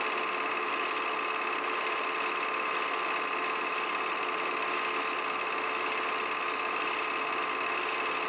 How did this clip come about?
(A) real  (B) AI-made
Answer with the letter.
A